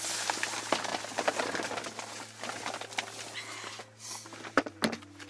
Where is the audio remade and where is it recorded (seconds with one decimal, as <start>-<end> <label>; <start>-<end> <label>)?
0.0-5.3 recorded